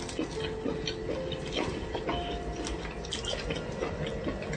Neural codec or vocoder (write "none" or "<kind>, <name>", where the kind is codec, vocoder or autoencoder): none